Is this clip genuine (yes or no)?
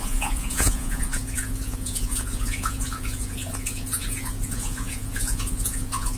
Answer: no